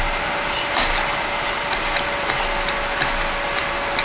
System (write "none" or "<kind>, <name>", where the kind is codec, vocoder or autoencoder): none